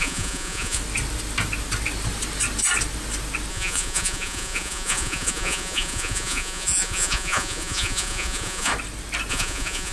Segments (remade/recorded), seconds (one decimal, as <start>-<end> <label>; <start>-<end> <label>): 0.0-0.8 remade; 0.8-3.5 recorded; 3.5-8.7 remade; 8.7-9.3 recorded; 9.3-9.9 remade